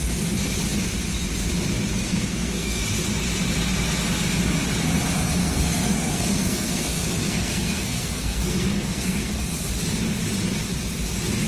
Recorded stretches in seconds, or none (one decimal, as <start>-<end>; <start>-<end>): 0.0-1.9; 2.8-5.4; 9.3-11.5